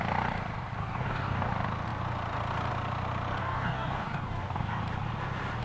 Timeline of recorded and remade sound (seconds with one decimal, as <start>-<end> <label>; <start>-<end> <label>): 0.0-0.8 recorded; 0.8-1.5 remade; 1.5-3.4 recorded; 3.4-4.8 remade; 4.8-5.6 recorded